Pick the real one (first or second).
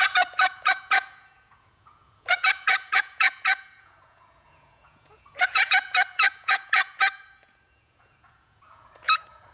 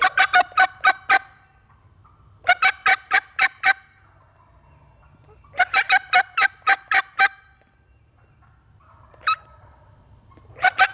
second